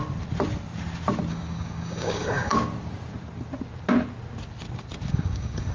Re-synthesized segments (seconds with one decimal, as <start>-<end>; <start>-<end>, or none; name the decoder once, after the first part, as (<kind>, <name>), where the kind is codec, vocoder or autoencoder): 1.3-2.5 (codec, DAC); 5.1-5.7